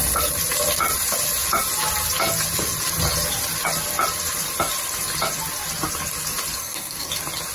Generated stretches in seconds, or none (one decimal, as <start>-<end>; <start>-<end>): 6.6-7.1